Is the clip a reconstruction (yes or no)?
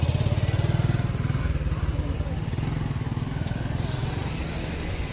no